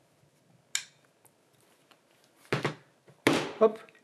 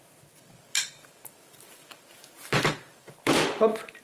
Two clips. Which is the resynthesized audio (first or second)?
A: second